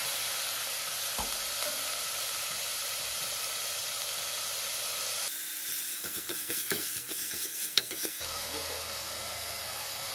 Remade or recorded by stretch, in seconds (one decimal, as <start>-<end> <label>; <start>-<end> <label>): 0.0-5.9 recorded; 5.9-10.1 remade